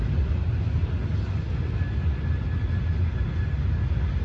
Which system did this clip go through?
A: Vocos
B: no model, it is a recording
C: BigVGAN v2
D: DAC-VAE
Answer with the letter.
B